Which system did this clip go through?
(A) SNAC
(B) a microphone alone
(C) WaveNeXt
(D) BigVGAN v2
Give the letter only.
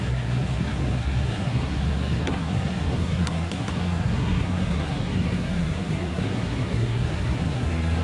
A